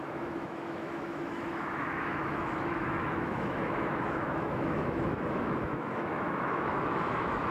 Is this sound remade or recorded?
remade